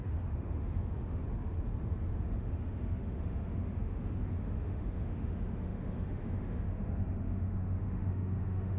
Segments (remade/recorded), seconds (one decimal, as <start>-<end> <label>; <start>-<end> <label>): 0.0-1.2 remade; 1.2-2.1 recorded; 2.1-8.8 remade